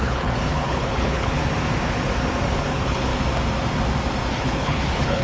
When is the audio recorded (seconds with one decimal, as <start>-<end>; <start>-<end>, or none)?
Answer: 1.4-2.6; 3.1-4.3